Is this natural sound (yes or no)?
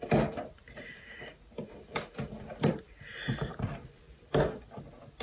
no